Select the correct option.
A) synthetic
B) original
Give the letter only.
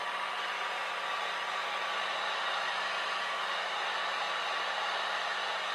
B